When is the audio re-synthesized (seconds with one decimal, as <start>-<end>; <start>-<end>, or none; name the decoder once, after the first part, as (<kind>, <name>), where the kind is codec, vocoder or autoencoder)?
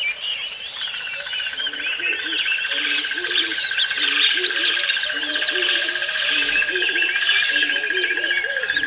0.0-7.8 (vocoder, BigVGAN v2); 8.5-8.9